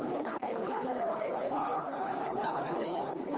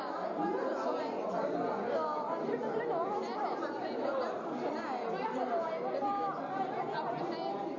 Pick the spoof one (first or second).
first